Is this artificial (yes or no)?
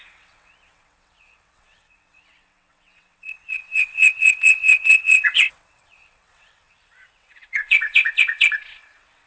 yes